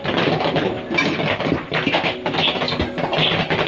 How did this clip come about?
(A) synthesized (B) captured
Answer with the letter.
B